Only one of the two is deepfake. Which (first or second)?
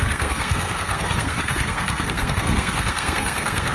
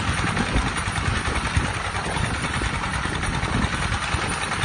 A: first